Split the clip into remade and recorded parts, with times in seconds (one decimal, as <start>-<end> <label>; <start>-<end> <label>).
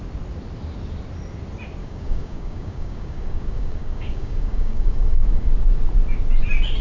0.0-1.8 recorded; 1.8-5.5 remade; 5.5-6.8 recorded